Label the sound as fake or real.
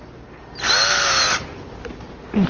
real